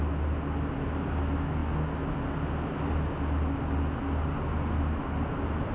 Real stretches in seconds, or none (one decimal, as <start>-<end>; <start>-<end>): 0.0-5.7